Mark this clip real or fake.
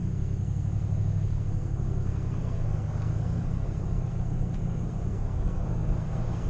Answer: fake